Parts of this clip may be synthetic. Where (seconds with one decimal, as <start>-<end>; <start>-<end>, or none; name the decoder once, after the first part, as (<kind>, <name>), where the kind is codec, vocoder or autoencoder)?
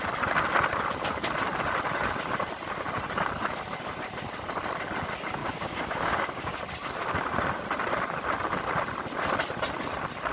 5.4-6.6 (codec, DAC)